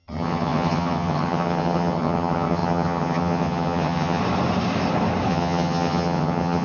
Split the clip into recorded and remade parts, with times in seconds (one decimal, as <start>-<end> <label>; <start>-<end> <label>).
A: 0.0-4.2 remade; 4.2-5.3 recorded; 5.3-6.6 remade